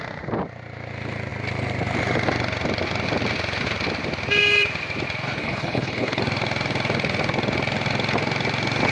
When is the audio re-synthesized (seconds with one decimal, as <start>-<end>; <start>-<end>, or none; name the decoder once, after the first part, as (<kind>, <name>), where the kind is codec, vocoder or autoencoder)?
5.4-6.2 (codec, HILCodec)